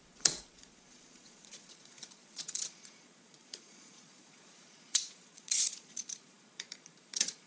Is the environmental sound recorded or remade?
remade